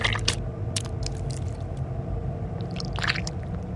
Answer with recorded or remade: recorded